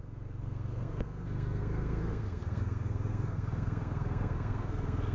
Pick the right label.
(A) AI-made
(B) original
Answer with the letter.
A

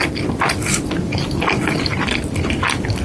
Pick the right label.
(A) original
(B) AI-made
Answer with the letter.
A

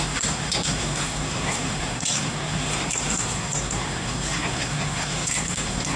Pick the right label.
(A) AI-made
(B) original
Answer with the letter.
A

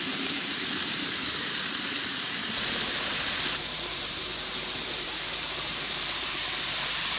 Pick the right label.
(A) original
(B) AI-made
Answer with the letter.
B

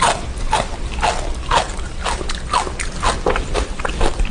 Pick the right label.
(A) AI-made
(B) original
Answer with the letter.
B